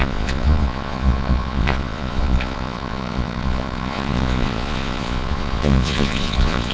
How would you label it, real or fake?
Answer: fake